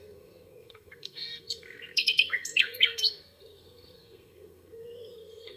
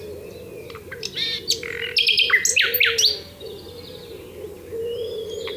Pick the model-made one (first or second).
first